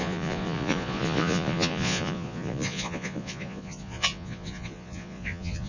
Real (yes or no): no